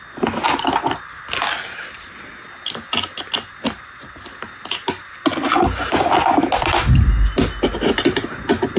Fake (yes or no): no